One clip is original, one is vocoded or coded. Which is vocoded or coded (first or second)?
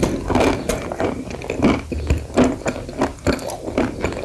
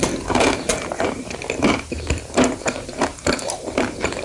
second